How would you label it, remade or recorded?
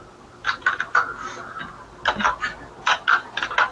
recorded